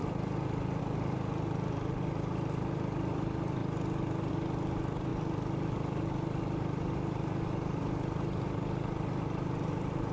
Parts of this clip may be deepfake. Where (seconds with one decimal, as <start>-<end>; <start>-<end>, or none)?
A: none